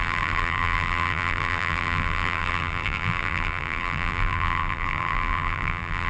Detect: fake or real fake